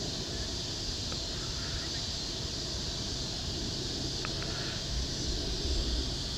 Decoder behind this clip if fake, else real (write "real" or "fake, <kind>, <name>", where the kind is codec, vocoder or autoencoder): real